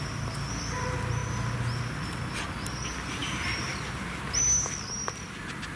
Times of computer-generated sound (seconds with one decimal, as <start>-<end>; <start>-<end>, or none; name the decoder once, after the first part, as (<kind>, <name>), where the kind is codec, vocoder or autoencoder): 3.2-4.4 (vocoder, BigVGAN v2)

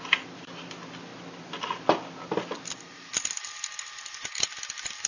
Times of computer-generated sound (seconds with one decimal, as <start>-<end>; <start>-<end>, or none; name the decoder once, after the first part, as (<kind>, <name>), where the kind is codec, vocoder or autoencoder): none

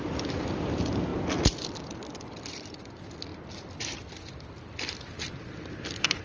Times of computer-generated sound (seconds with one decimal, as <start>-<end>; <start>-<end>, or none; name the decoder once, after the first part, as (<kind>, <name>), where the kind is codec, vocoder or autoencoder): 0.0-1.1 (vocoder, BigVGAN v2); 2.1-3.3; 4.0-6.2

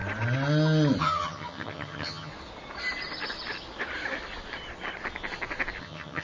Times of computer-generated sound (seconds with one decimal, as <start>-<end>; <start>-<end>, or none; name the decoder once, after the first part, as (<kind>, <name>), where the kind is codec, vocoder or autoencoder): 1.0-2.3 (vocoder, HiFi-GAN); 5.8-6.2